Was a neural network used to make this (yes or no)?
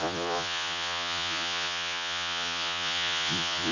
yes